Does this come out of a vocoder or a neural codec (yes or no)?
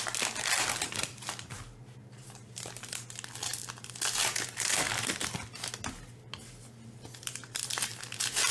no